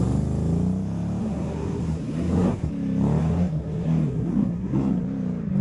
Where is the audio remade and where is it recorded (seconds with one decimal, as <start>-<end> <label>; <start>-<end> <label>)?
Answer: 0.0-1.2 recorded; 1.2-2.7 remade; 2.7-3.2 recorded; 3.2-5.0 remade; 5.0-5.6 recorded